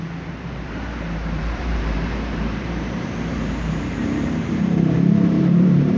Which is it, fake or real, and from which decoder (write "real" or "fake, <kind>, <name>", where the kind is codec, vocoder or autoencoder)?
fake, vocoder, BigVGAN v2